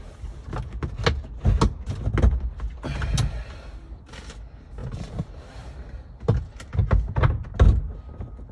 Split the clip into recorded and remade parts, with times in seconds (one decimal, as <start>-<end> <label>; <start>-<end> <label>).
0.0-8.5 recorded